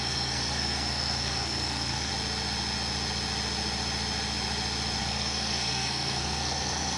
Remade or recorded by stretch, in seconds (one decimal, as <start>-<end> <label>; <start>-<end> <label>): 0.0-2.1 remade; 2.1-5.0 recorded; 5.0-7.0 remade